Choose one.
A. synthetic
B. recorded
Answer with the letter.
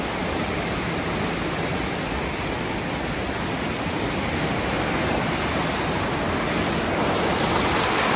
B